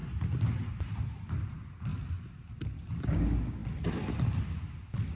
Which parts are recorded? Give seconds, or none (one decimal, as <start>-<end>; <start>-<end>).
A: 0.0-5.2